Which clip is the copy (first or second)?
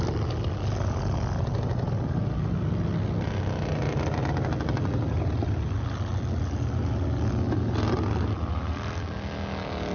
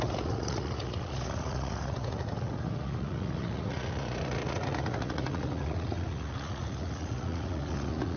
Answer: second